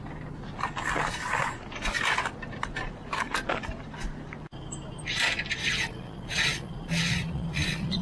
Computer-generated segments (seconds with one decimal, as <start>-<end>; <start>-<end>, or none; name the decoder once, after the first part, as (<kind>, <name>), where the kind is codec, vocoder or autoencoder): 5.6-8.0 (vocoder, Vocos)